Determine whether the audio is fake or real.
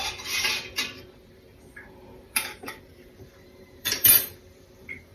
fake